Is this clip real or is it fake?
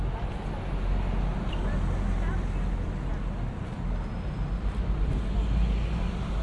real